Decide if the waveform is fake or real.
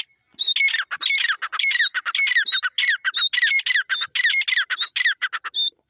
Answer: real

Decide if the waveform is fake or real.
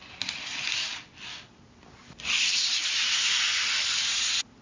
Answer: real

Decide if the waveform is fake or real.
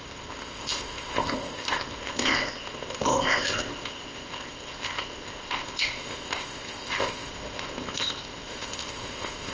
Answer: fake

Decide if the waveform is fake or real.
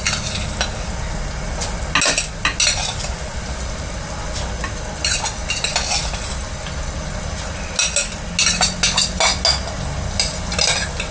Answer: real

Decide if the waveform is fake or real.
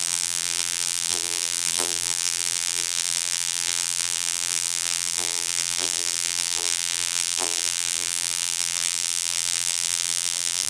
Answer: fake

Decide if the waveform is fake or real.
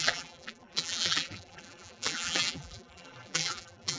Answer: fake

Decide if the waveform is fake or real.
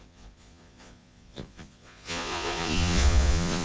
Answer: fake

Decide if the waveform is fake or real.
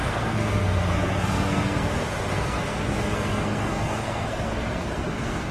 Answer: fake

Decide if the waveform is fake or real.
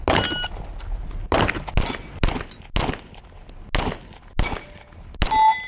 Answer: real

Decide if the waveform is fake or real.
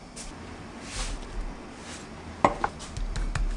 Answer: real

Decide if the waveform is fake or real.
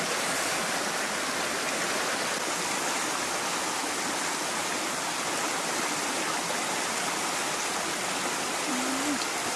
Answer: real